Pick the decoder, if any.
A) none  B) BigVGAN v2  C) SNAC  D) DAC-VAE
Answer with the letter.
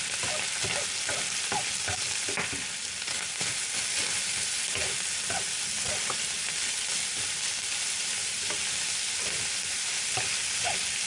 A